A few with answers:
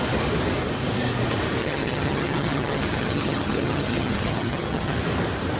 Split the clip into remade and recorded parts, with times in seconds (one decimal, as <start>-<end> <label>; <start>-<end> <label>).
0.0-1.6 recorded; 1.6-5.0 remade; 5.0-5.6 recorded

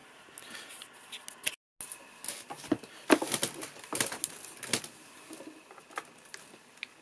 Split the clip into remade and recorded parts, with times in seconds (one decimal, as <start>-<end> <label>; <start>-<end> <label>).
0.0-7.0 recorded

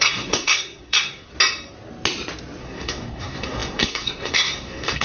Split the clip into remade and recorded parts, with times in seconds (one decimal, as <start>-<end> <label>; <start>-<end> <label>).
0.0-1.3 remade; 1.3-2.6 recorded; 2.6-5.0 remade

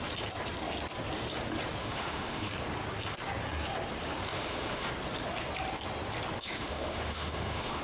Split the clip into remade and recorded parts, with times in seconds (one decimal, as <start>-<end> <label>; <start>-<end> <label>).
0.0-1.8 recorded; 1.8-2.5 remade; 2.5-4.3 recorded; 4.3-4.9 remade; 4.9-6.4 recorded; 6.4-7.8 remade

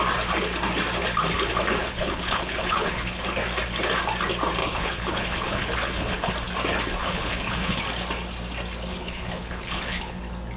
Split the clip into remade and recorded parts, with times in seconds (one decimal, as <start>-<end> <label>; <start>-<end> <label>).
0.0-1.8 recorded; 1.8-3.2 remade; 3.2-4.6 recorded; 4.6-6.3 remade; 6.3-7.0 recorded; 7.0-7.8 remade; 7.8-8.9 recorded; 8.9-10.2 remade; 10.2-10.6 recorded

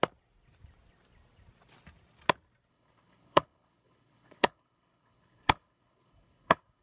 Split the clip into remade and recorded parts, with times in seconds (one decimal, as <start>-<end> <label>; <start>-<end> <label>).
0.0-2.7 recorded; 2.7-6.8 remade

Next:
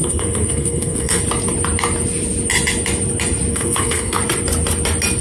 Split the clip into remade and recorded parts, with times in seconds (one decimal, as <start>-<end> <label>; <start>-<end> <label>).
0.0-1.2 remade; 1.2-3.5 recorded; 3.5-4.2 remade; 4.2-5.2 recorded